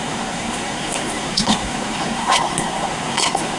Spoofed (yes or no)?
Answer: yes